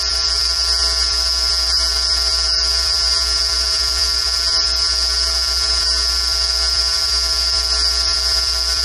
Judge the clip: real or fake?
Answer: fake